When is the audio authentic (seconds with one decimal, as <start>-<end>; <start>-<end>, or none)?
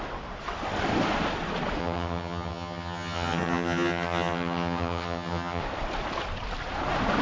0.0-1.8; 5.6-7.2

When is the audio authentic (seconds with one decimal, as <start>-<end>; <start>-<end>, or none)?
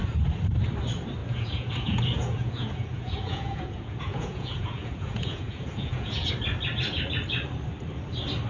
0.0-1.2; 6.3-8.5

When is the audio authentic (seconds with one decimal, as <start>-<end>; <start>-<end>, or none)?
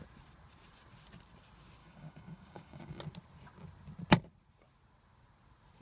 0.0-1.8; 3.0-5.8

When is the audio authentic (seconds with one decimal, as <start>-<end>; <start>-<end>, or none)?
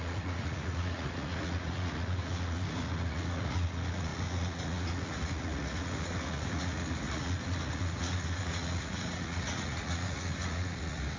none